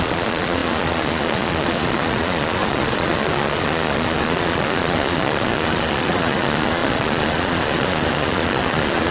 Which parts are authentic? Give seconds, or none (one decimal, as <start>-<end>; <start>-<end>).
none